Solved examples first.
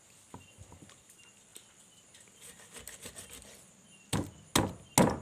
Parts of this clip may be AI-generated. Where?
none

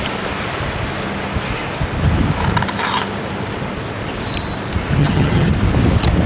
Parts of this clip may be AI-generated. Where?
5.0-5.5 (vocoder, HiFi-GAN)